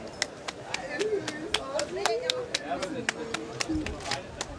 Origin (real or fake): real